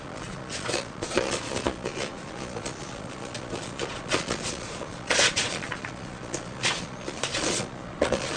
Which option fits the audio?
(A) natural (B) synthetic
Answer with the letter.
B